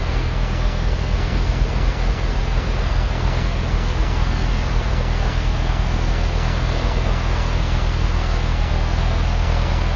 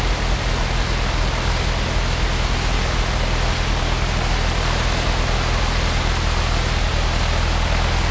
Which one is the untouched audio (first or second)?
second